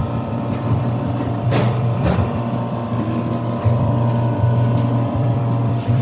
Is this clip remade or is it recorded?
remade